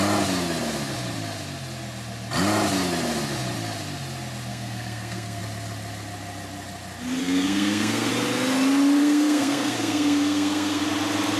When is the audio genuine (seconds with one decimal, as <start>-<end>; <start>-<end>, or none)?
0.0-4.5; 5.4-7.2; 8.1-9.0; 10.8-11.4